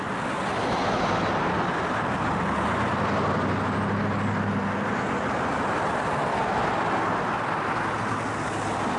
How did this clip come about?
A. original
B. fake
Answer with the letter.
A